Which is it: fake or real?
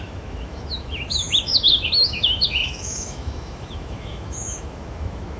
fake